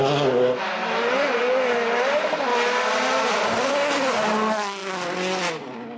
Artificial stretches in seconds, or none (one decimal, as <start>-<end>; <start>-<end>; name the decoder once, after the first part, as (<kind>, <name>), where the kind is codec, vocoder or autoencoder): 0.8-1.4 (vocoder, BigVGAN v2)

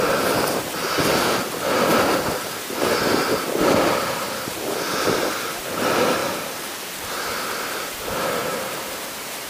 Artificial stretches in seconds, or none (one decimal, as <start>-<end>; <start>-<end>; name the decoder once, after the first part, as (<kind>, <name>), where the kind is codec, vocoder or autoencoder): 8.4-9.5 (vocoder, BigVGAN v2)

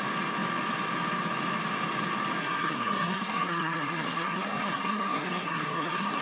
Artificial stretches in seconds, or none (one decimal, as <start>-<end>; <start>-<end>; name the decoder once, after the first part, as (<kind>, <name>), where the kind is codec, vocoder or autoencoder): 2.4-6.2 (codec, SNAC)

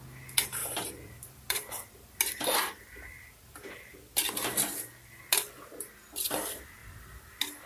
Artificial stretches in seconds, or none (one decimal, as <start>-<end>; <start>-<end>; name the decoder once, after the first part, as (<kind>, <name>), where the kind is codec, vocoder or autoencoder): 0.6-1.9 (vocoder, BigVGAN v2)